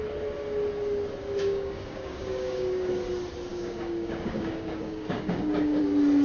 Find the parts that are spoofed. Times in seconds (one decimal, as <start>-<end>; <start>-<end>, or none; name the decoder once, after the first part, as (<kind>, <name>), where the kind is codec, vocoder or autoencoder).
1.4-2.9 (codec, DAC); 3.5-5.8